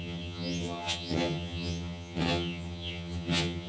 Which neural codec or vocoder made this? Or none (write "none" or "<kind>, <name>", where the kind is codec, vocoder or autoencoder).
vocoder, HiFi-GAN